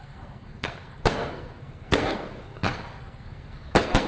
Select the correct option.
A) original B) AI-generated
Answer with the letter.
B